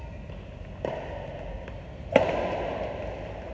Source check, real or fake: real